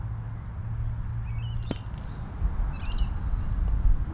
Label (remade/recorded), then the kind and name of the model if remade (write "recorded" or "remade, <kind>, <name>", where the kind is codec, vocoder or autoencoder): recorded